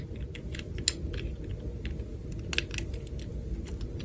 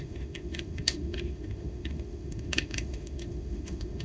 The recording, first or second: first